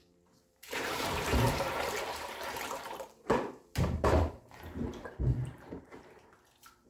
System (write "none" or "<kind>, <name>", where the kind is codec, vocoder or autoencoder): vocoder, BigVGAN v2